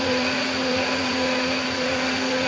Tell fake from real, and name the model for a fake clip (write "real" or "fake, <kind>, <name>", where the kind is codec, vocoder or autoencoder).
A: fake, vocoder, Vocos